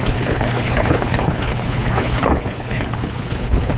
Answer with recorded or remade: remade